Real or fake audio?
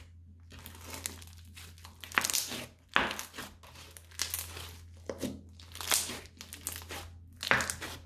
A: real